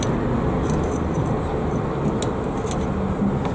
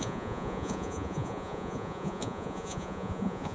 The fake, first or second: second